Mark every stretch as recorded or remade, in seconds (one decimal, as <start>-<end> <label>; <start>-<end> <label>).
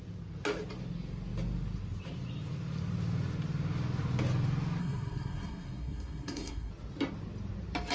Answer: 0.0-4.8 recorded; 4.8-6.7 remade; 6.7-7.9 recorded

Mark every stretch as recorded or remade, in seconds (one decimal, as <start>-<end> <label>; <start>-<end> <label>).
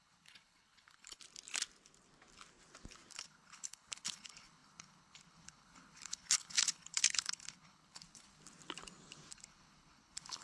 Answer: 0.0-1.2 remade; 1.2-3.1 recorded; 3.1-8.4 remade; 8.4-9.3 recorded; 9.3-10.4 remade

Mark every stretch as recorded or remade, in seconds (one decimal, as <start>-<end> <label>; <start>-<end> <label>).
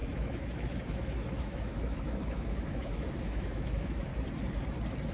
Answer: 0.0-4.1 remade; 4.1-5.1 recorded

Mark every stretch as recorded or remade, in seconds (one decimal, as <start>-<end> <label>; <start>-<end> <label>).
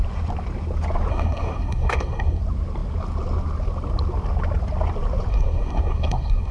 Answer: 0.0-1.1 recorded; 1.1-2.4 remade; 2.4-5.3 recorded; 5.3-6.5 remade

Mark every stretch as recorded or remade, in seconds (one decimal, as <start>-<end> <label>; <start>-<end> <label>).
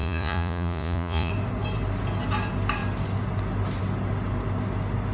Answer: 0.0-1.3 remade; 1.3-5.1 recorded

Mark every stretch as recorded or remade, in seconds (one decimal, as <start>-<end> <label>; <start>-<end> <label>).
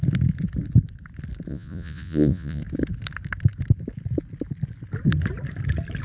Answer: 0.0-1.5 recorded; 1.5-2.6 remade; 2.6-6.0 recorded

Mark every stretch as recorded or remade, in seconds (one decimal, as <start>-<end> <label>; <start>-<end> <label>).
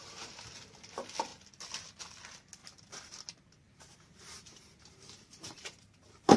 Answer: 0.0-2.6 recorded; 2.6-6.4 remade